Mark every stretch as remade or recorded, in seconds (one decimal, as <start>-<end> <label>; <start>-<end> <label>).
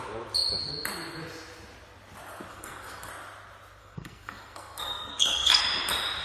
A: 0.0-2.5 recorded; 2.5-3.1 remade; 3.1-3.8 recorded; 3.8-5.6 remade; 5.6-6.2 recorded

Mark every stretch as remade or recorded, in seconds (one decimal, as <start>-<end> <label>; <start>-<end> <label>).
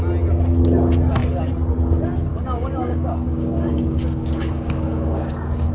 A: 0.0-2.3 recorded; 2.3-5.7 remade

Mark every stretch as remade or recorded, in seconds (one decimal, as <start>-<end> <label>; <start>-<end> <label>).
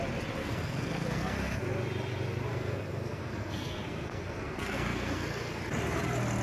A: 0.0-0.4 recorded; 0.4-1.6 remade; 1.6-2.5 recorded; 2.5-5.6 remade; 5.6-6.4 recorded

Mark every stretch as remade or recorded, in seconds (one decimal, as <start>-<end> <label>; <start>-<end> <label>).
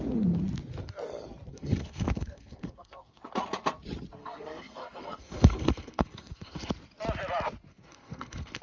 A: 0.0-1.5 recorded; 1.5-3.3 remade; 3.3-4.2 recorded; 4.2-6.7 remade; 6.7-7.7 recorded; 7.7-8.6 remade